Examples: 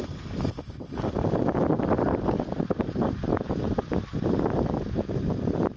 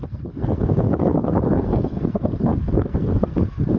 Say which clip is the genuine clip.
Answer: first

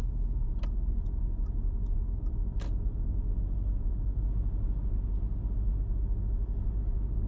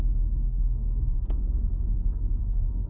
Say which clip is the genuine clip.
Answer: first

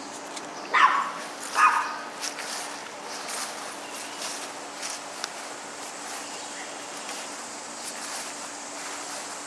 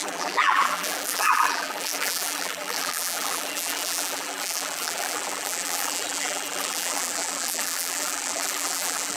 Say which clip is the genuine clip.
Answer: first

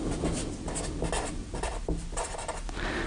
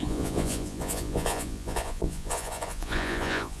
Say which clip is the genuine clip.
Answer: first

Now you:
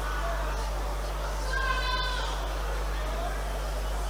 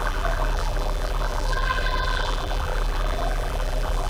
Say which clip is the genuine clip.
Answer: first